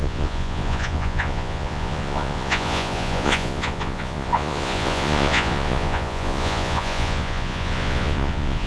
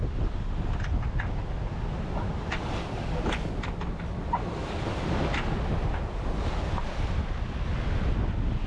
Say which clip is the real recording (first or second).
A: second